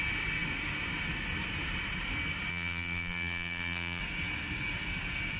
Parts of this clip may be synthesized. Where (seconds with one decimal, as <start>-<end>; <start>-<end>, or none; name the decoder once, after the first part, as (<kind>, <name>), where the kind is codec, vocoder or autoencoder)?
2.5-4.0 (vocoder, BigVGAN v2)